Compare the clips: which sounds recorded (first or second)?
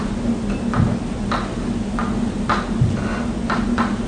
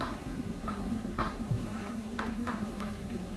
first